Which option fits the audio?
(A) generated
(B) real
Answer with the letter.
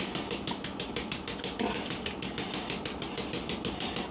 B